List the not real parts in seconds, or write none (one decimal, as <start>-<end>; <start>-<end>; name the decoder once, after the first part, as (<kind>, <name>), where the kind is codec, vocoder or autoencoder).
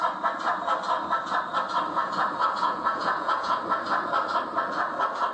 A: 2.4-3.6 (vocoder, Vocos)